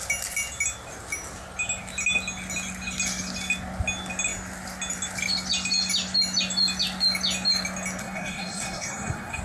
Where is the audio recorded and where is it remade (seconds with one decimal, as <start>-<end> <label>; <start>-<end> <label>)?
0.0-8.0 recorded; 8.0-9.4 remade